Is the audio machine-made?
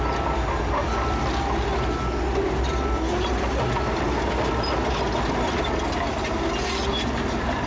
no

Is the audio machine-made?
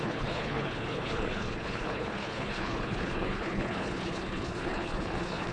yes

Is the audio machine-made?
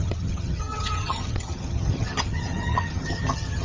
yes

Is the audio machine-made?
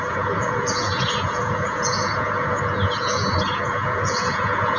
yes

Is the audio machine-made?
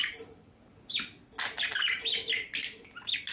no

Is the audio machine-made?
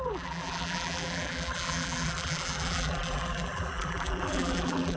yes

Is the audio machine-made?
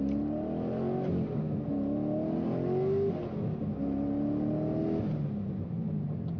no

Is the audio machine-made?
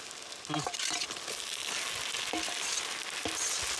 no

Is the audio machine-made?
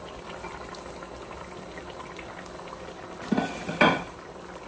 no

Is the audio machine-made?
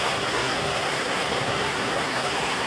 yes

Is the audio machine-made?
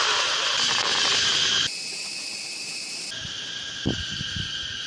no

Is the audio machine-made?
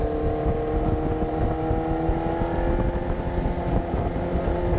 no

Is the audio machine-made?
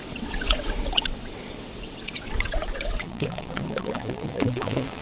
yes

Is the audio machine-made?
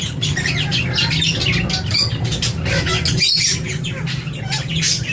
no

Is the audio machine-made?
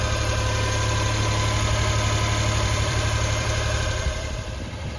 yes